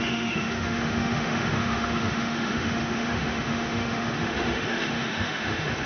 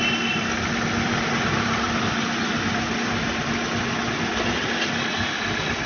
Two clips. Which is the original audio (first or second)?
second